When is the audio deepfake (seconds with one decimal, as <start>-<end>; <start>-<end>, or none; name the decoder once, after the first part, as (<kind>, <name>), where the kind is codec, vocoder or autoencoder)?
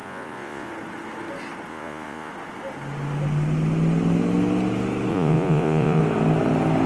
0.0-0.7 (vocoder, Vocos); 1.7-2.3; 5.1-6.0